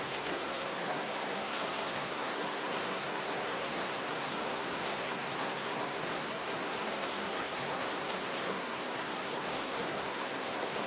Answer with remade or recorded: remade